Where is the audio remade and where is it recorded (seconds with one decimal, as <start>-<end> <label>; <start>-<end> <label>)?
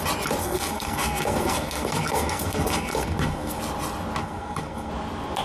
0.0-0.4 recorded; 0.4-3.6 remade; 3.6-4.2 recorded; 4.2-4.9 remade; 4.9-5.4 recorded